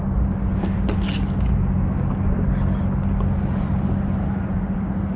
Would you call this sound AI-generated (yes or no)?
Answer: no